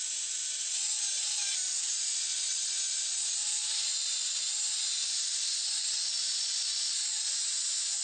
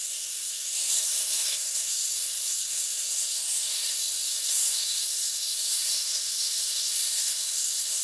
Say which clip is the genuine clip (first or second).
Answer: first